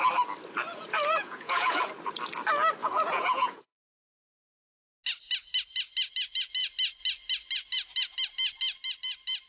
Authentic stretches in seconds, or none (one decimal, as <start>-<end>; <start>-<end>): 0.0-0.7; 1.9-2.8; 4.8-9.5